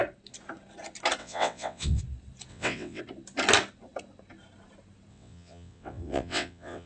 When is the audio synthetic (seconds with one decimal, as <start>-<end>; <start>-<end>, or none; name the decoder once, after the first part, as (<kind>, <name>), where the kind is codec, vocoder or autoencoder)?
1.2-2.0 (vocoder, WaveNeXt); 2.5-3.0; 5.1-6.9